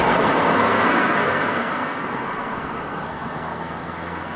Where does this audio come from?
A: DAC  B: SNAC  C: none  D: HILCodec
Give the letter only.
B